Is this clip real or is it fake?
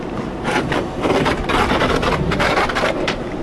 fake